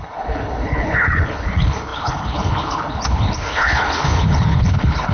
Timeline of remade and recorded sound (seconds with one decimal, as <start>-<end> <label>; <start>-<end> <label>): 0.0-5.1 remade